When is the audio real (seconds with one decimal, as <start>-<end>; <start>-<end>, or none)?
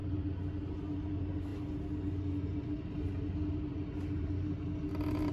0.0-5.3